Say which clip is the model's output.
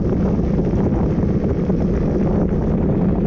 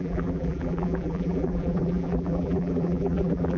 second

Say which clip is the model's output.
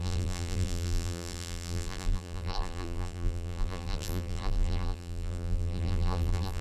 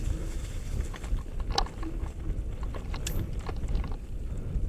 first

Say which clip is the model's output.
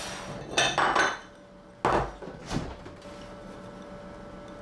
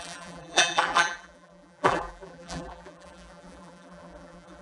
second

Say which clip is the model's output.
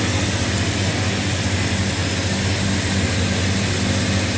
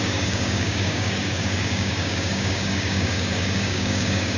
second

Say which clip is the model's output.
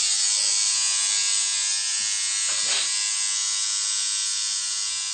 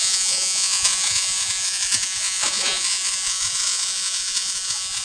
second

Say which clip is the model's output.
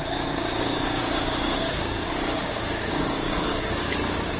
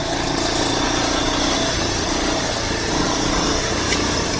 first